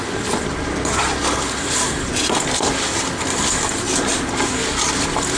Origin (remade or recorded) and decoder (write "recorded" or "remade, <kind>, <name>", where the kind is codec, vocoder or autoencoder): recorded